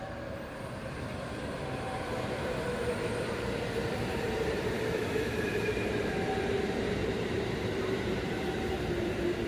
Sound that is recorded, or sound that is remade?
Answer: remade